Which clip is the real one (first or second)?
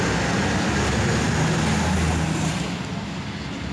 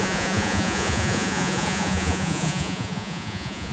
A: first